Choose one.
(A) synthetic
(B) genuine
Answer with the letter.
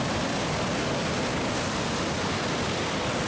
B